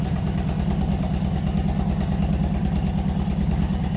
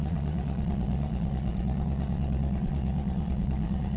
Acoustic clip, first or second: first